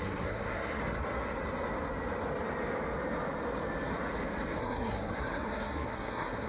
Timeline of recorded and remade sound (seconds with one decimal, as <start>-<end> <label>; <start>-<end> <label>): 0.0-0.8 remade; 0.8-4.6 recorded; 4.6-6.5 remade